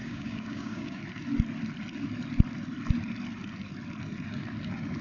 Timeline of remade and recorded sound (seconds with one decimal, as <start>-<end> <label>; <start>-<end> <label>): 0.0-1.0 remade; 1.0-5.0 recorded